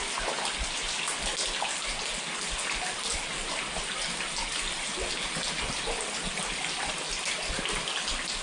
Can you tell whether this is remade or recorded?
recorded